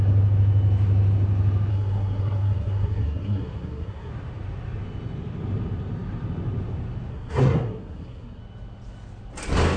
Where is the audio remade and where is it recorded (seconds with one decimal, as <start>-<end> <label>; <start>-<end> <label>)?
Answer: 0.0-1.7 recorded; 1.7-4.1 remade; 4.1-7.1 recorded; 7.1-8.4 remade; 8.4-9.8 recorded